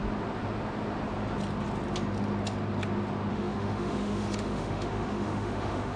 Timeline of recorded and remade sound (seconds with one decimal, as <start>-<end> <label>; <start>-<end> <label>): 0.0-3.3 recorded; 3.3-6.0 remade